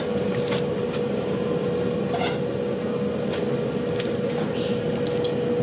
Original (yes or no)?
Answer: yes